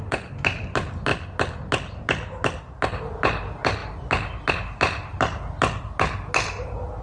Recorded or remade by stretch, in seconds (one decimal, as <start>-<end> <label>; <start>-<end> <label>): 0.0-7.0 recorded